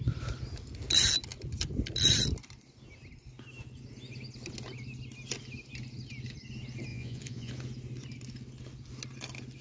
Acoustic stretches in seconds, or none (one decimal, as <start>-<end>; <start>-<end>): 0.0-6.9; 7.5-9.6